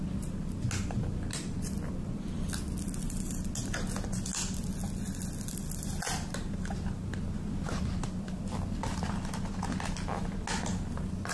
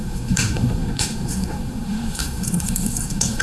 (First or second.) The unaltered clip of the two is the first